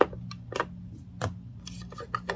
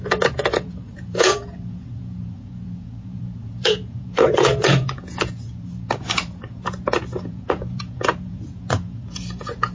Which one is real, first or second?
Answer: first